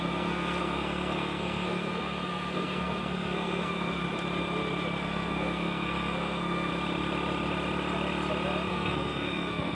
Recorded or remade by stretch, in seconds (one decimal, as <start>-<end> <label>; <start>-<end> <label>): 0.0-4.0 remade; 4.0-5.0 recorded; 5.0-6.7 remade; 6.7-8.7 recorded; 8.7-9.7 remade